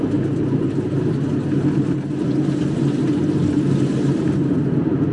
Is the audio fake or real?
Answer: real